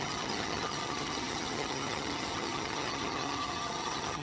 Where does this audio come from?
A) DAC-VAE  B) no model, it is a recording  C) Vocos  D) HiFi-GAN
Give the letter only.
D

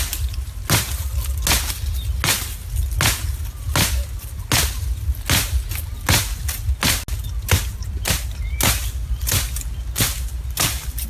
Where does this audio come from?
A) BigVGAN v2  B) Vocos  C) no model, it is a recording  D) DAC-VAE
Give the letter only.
C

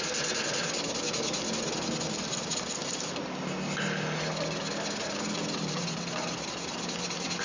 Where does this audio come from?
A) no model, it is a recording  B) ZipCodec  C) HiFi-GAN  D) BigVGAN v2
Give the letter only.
A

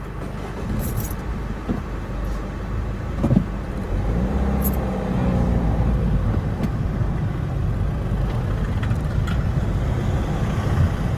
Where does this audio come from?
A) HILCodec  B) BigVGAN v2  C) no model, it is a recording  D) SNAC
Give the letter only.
C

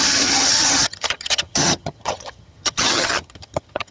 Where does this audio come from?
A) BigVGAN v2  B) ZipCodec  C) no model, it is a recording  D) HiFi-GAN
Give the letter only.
D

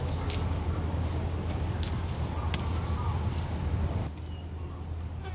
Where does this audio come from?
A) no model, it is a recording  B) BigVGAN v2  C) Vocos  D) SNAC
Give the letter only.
A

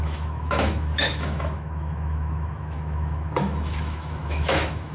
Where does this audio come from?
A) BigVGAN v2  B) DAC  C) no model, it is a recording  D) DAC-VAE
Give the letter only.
D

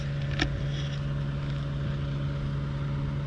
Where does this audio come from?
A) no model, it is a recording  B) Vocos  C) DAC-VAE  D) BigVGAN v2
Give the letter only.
A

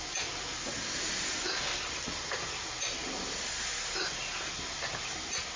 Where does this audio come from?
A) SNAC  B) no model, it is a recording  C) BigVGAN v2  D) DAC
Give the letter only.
B